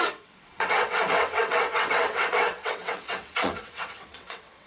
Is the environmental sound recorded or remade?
remade